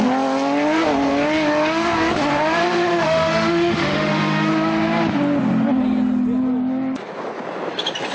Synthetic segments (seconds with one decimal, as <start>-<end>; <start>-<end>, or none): 2.9-4.5